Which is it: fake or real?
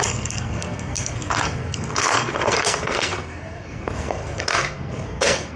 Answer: fake